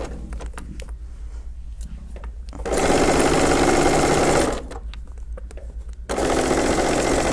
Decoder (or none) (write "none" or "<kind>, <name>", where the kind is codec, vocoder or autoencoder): none